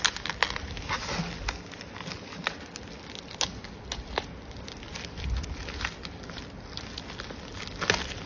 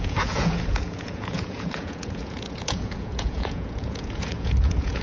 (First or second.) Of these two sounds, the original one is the first